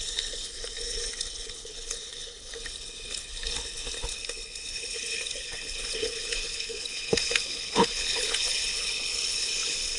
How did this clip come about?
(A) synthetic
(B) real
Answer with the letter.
A